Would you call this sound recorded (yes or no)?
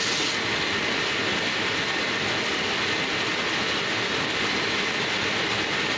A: yes